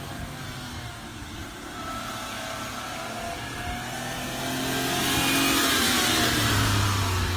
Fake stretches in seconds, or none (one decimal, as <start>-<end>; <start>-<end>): 1.1-2.2; 5.6-7.0